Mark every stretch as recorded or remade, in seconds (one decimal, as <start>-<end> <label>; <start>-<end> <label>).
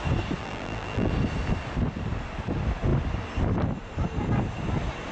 0.0-0.4 recorded; 0.4-1.1 remade; 1.1-5.1 recorded